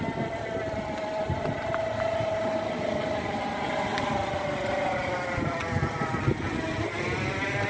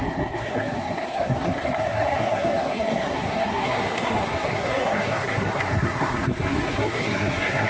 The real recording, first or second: first